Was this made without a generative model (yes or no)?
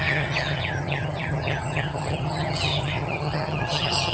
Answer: no